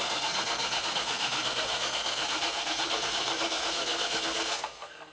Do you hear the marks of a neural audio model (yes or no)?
yes